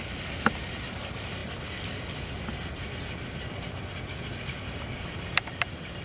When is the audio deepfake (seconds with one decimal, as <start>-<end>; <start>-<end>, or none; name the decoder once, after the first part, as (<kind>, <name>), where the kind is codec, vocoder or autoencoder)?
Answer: 0.0-1.4 (vocoder, BigVGAN v2); 5.0-6.0